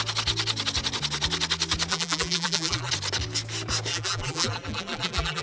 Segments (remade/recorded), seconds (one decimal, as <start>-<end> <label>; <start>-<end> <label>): 0.0-1.9 recorded; 1.9-2.9 remade; 2.9-3.9 recorded; 3.9-5.4 remade